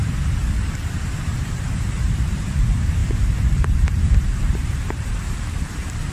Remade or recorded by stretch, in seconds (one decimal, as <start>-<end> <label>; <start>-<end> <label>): 0.0-0.6 recorded; 0.6-6.1 remade